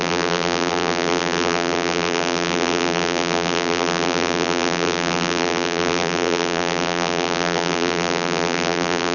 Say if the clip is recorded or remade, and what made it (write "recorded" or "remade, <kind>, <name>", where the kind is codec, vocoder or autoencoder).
remade, vocoder, BigVGAN v2